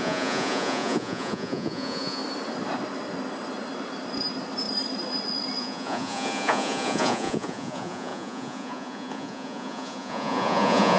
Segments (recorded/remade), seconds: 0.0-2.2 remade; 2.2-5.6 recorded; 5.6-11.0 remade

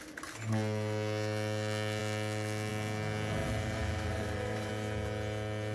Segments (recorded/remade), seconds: 0.0-3.4 recorded; 3.4-4.7 remade; 4.7-5.7 recorded

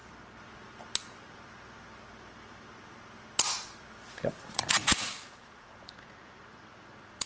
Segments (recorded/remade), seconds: 0.0-4.4 recorded; 4.4-7.3 remade

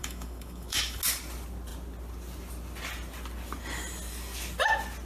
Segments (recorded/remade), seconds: 0.0-1.0 remade; 1.0-5.1 recorded

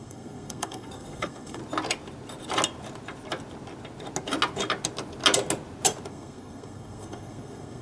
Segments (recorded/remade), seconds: 0.0-1.6 remade; 1.6-6.1 recorded; 6.1-7.8 remade

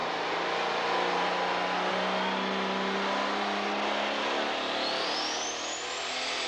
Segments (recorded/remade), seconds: 0.0-6.5 recorded

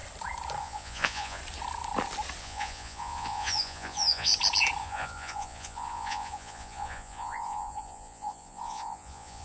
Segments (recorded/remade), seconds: 0.0-0.6 recorded; 0.6-1.4 remade; 1.4-2.4 recorded; 2.4-4.3 remade; 4.3-4.8 recorded; 4.8-9.4 remade